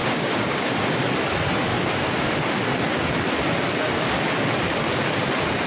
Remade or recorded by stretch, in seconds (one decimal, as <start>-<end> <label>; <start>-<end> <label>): 0.0-0.7 remade; 0.7-5.7 recorded